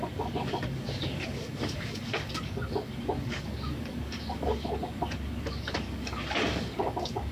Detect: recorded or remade remade